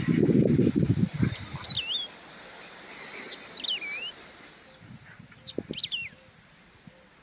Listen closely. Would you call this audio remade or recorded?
recorded